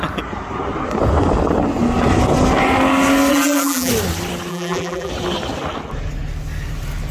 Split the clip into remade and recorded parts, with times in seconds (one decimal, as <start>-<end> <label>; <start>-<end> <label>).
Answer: 0.0-3.3 recorded; 3.3-3.9 remade; 3.9-4.5 recorded; 4.5-5.1 remade; 5.1-7.1 recorded